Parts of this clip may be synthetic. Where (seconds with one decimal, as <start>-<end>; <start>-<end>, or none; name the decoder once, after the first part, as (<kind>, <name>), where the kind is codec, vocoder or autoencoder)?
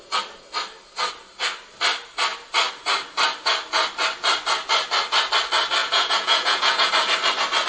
5.8-6.9 (vocoder, Vocos)